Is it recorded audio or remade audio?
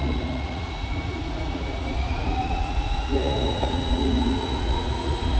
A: remade